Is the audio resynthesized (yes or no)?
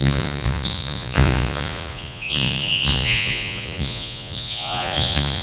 yes